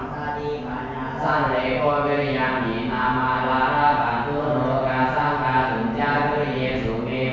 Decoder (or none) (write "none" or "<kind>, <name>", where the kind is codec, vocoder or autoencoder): none